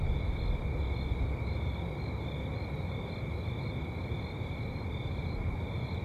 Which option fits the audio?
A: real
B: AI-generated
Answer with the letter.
A